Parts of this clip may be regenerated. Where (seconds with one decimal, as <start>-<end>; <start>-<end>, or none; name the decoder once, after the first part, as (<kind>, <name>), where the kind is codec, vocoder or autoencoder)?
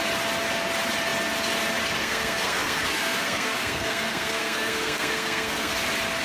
2.0-5.7 (codec, SNAC)